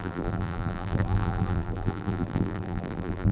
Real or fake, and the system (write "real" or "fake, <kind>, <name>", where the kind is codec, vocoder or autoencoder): fake, vocoder, BigVGAN v2